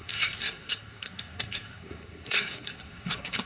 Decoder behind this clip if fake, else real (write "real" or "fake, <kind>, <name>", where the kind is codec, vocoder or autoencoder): fake, codec, SNAC